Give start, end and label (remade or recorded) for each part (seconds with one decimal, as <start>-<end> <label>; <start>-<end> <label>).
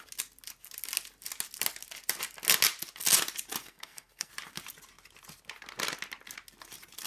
0.0-3.6 recorded; 3.6-4.3 remade; 4.3-7.1 recorded